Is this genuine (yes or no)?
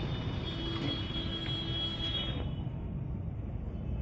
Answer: yes